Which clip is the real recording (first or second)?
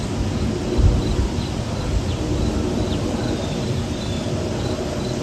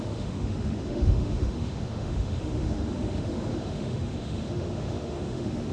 first